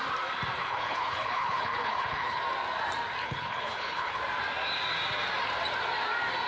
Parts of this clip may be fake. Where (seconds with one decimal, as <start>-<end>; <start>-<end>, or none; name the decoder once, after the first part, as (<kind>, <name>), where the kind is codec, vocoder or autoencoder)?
0.6-2.4 (codec, HILCodec); 3.2-4.2